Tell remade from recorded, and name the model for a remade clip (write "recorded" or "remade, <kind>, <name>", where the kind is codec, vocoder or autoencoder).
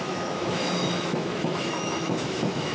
remade, autoencoder, DAC-VAE